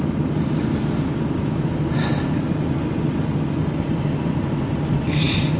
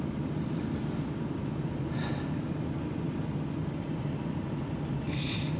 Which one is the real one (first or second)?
first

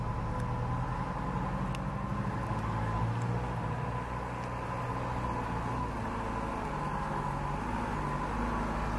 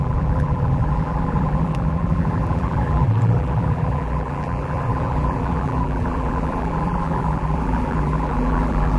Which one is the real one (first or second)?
first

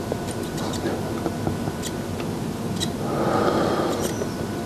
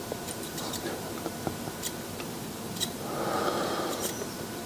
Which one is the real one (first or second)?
first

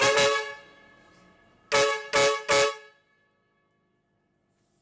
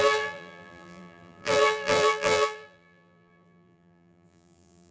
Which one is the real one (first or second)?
first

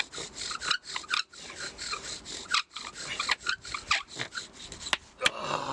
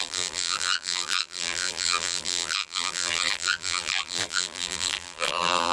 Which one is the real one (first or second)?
first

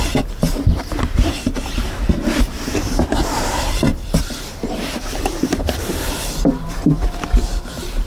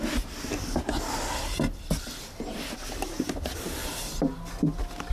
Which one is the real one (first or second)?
second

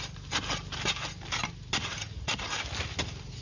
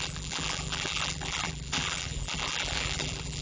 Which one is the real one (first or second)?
first